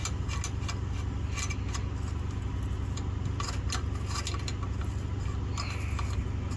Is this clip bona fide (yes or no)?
yes